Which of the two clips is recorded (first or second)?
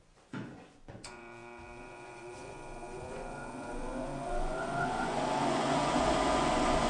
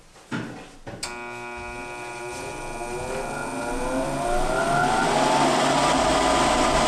second